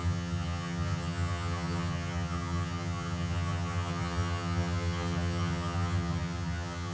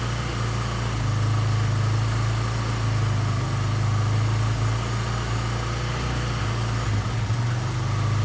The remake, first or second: first